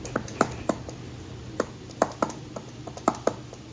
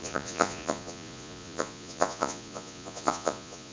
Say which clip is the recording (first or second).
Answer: first